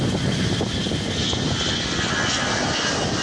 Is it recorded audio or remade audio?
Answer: recorded